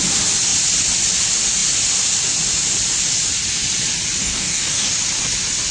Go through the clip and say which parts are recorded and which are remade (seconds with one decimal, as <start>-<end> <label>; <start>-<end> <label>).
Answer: 0.0-4.2 recorded; 4.2-4.9 remade; 4.9-5.7 recorded